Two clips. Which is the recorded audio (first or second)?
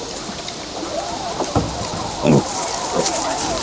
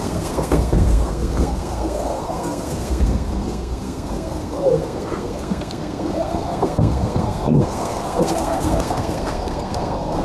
first